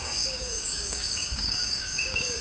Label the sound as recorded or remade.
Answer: remade